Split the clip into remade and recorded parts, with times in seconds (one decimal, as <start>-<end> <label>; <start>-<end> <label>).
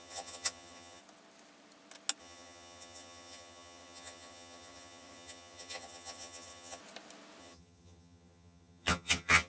0.0-1.0 remade; 1.0-2.2 recorded; 2.2-6.8 remade; 6.8-7.4 recorded; 7.4-9.5 remade